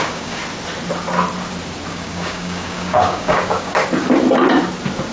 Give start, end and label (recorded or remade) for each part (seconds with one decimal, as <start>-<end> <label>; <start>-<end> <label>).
0.0-0.4 remade; 0.4-1.9 recorded; 1.9-3.8 remade; 3.8-5.1 recorded